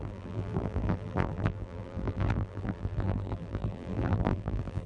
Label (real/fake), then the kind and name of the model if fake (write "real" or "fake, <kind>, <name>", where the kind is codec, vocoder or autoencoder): fake, vocoder, BigVGAN v2